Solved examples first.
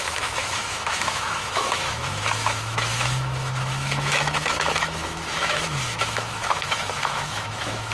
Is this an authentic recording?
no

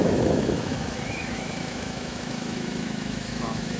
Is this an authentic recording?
no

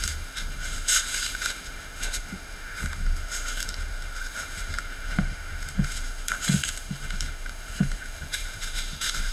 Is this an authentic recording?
no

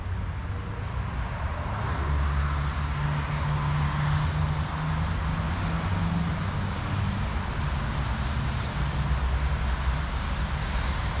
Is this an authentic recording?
yes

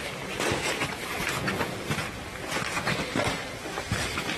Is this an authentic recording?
yes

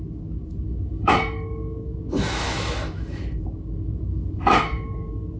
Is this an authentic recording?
no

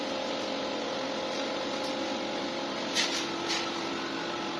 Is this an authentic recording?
yes